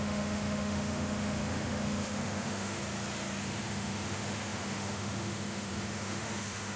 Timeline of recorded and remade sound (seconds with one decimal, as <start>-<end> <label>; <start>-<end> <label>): 0.0-2.8 remade; 2.8-3.4 recorded; 3.4-6.8 remade